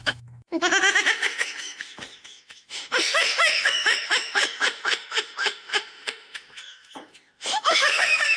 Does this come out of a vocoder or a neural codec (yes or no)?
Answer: yes